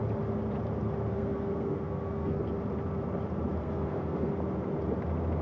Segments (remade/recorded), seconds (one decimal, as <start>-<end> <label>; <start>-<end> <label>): 0.0-1.1 recorded; 1.1-2.4 remade; 2.4-3.6 recorded; 3.6-4.3 remade; 4.3-5.4 recorded